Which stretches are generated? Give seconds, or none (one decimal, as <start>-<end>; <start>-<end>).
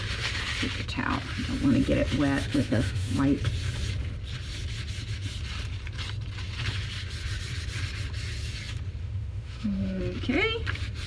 2.5-3.2; 9.0-10.0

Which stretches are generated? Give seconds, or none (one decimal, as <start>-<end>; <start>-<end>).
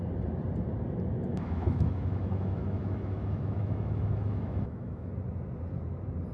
1.3-5.1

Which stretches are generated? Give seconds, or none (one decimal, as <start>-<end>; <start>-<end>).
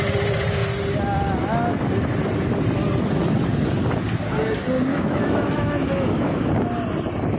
4.9-6.5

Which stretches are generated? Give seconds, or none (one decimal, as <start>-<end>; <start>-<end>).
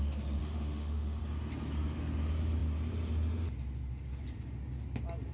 0.4-1.2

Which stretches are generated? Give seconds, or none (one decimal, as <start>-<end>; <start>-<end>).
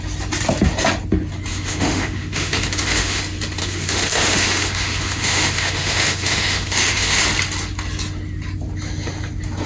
1.5-3.2; 3.6-7.2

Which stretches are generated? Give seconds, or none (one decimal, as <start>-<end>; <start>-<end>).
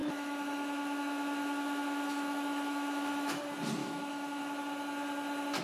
0.0-3.4; 3.8-4.4